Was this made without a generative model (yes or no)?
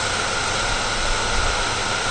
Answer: yes